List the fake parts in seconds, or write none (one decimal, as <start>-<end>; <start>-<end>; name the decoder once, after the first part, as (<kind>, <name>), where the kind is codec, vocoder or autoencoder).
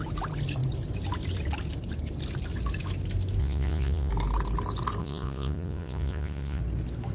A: 3.4-4.1 (vocoder, Vocos); 5.0-6.6